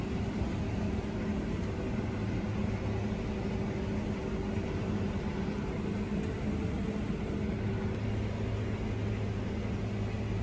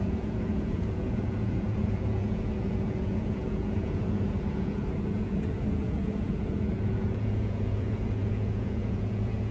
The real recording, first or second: first